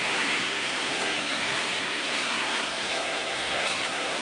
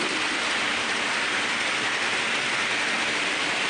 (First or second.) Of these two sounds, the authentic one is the second